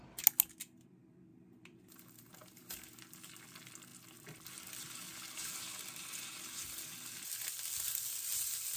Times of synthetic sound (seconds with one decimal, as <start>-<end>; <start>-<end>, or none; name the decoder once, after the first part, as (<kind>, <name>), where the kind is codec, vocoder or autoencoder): 1.3-3.0 (vocoder, BigVGAN v2)